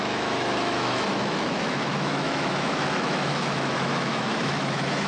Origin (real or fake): fake